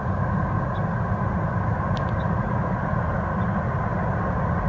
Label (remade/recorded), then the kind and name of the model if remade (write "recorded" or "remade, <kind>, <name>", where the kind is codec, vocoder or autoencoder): recorded